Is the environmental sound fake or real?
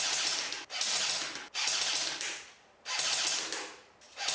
real